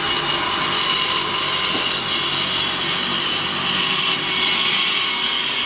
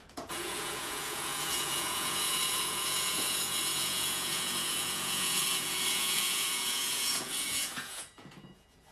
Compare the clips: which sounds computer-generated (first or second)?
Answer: second